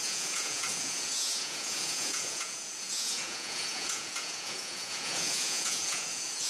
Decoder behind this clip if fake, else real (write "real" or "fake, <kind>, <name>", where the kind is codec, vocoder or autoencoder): fake, vocoder, Vocos